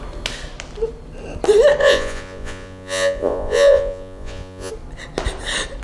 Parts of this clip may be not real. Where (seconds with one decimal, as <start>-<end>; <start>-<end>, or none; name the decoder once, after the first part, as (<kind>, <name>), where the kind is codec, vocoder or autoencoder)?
1.8-4.7 (vocoder, Vocos)